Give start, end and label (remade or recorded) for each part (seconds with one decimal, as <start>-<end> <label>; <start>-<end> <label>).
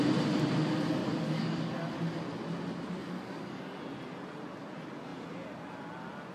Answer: 0.0-1.0 recorded; 1.0-1.7 remade; 1.7-3.0 recorded; 3.0-3.8 remade; 3.8-6.3 recorded